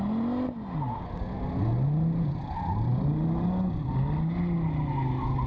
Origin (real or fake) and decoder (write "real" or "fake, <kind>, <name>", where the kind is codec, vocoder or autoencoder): real